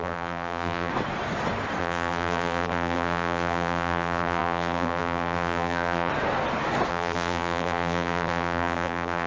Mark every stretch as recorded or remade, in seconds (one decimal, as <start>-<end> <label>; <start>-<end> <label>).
0.0-0.9 remade; 0.9-1.8 recorded; 1.8-6.1 remade; 6.1-6.9 recorded; 6.9-9.3 remade